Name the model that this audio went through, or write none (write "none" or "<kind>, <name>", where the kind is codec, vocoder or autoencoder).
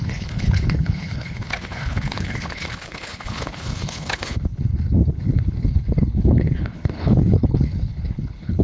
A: codec, HILCodec